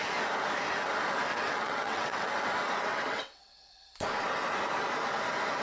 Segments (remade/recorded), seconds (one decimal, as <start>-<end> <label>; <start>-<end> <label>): 0.0-1.3 recorded; 1.3-2.3 remade; 2.3-2.9 recorded; 2.9-3.7 remade; 3.7-5.6 recorded